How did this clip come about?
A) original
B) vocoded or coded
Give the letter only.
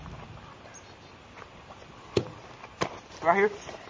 A